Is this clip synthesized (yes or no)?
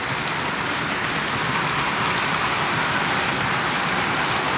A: no